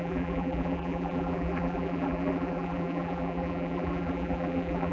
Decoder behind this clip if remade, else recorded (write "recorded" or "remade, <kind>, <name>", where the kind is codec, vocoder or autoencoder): remade, vocoder, BigVGAN v2